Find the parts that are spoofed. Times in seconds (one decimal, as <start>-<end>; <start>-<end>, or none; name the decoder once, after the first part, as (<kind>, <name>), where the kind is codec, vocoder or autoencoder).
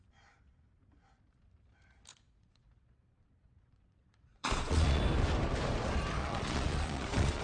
2.1-5.0 (vocoder, Vocos); 6.2-7.4